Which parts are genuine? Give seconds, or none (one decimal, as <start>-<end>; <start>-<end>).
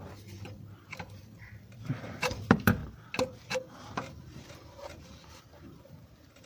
2.8-3.5